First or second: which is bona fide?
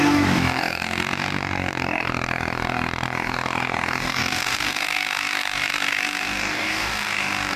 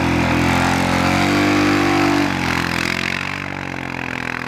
second